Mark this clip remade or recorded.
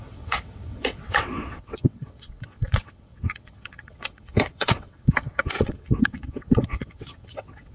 remade